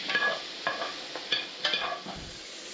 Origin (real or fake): real